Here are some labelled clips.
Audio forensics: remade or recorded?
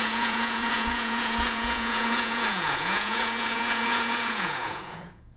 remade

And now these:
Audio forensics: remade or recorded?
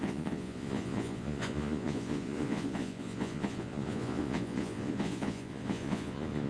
remade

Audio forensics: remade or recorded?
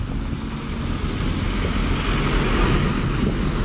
recorded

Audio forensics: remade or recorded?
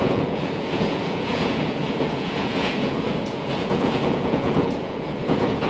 remade